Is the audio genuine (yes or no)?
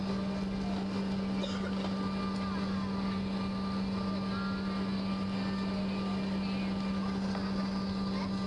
yes